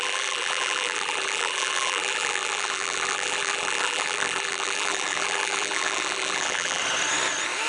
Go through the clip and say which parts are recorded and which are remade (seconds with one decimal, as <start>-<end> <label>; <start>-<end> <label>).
0.0-6.8 remade; 6.8-7.7 recorded